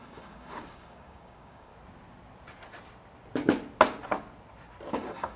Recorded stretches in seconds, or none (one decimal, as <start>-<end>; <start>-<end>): 1.7-4.9